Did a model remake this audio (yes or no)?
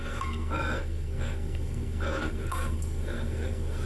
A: yes